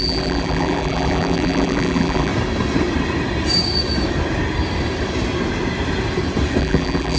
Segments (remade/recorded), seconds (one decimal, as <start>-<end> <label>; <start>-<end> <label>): 0.0-2.3 remade; 2.3-6.6 recorded; 6.6-7.2 remade